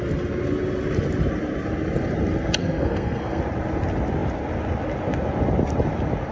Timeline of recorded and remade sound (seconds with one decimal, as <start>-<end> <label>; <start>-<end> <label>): 0.0-2.6 recorded; 2.6-3.4 remade; 3.4-6.3 recorded